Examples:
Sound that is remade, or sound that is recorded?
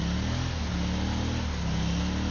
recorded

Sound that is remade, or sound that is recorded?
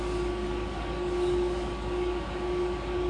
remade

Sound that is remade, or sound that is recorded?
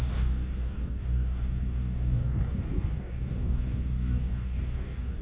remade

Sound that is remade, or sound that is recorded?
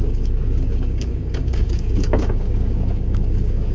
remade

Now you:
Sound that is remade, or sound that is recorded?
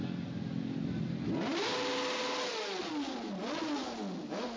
recorded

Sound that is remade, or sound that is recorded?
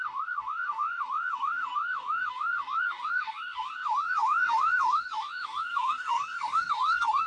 remade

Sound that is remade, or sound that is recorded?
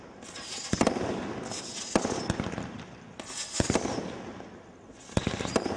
recorded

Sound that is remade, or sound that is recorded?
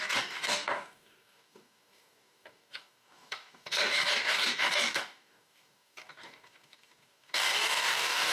remade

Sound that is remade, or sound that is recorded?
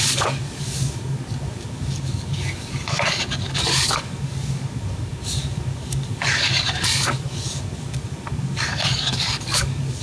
remade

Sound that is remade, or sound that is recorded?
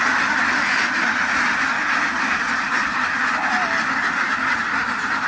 recorded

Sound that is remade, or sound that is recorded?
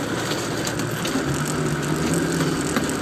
recorded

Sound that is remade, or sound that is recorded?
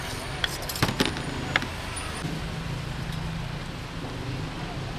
recorded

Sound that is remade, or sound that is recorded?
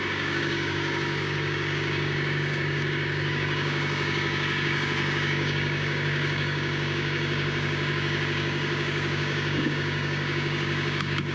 remade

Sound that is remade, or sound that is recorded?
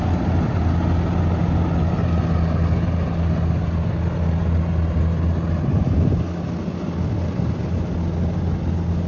recorded